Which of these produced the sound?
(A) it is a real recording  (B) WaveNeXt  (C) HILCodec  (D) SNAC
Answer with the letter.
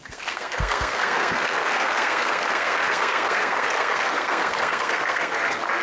D